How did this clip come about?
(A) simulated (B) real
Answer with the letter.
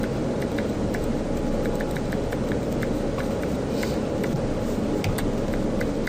B